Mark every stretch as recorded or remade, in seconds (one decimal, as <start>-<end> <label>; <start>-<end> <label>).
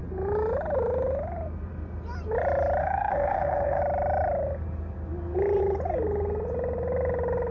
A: 0.0-2.8 recorded; 2.8-3.8 remade; 3.8-7.5 recorded